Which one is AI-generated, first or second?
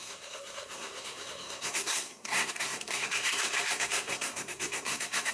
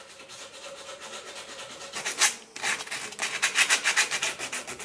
first